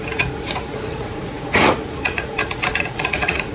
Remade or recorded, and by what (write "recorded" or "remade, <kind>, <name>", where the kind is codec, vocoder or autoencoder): remade, vocoder, Vocos